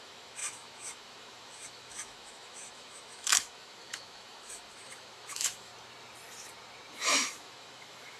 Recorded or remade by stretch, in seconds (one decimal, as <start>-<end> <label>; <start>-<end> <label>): 0.0-5.7 remade; 5.7-6.9 recorded; 6.9-8.2 remade